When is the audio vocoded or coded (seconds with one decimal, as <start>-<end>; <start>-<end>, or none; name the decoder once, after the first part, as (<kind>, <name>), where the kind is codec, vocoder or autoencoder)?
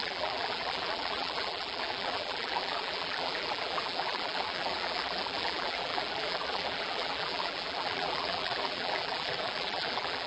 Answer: 0.0-10.3 (vocoder, BigVGAN v2)